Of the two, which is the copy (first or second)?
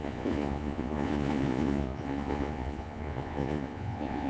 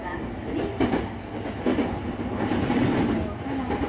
first